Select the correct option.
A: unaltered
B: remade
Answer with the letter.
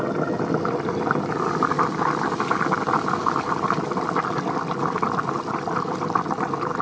A